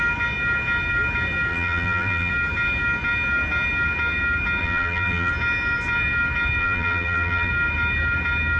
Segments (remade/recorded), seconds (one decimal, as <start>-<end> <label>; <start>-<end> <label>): 0.0-1.5 recorded; 1.5-2.3 remade; 2.3-4.6 recorded; 4.6-5.3 remade; 5.3-6.6 recorded; 6.6-7.5 remade; 7.5-8.6 recorded